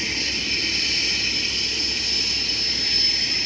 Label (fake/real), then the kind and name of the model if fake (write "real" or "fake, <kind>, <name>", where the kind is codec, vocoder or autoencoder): real